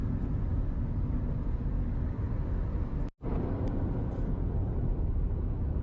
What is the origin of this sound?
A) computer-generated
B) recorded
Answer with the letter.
A